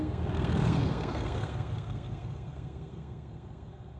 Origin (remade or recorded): remade